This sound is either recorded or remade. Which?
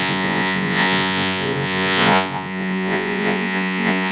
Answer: remade